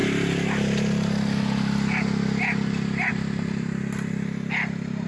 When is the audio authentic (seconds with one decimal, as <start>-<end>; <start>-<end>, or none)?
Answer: 0.0-5.1